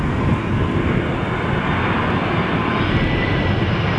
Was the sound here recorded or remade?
recorded